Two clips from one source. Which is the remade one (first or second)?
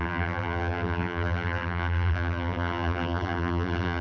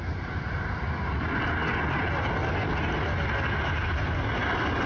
first